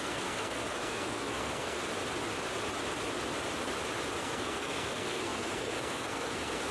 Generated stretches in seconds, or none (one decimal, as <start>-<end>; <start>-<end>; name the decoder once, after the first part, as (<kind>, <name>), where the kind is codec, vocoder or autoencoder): 0.0-1.8 (codec, SNAC); 4.2-6.7